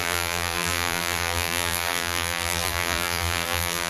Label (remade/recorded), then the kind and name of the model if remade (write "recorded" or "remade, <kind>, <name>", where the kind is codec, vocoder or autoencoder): remade, vocoder, BigVGAN v2